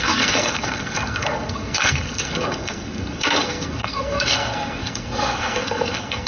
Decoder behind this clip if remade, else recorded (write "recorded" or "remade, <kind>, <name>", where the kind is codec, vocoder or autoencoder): remade, codec, SNAC